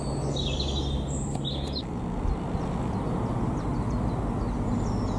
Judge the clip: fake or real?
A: real